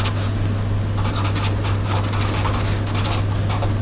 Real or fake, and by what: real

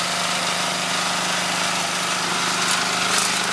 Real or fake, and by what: real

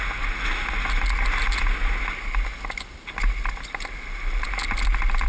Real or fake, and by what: real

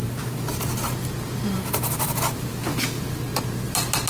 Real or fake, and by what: real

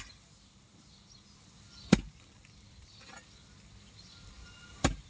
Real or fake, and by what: real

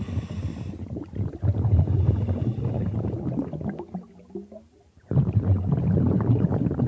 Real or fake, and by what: real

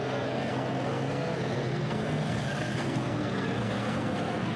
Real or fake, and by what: fake, codec, SNAC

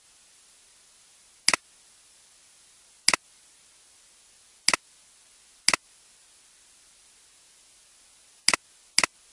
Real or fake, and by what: real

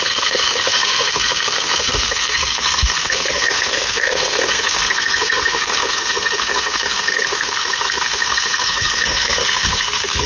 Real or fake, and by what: fake, codec, SNAC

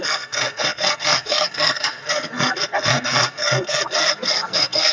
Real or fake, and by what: fake, codec, SNAC